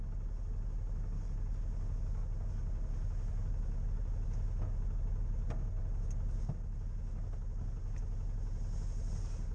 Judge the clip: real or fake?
real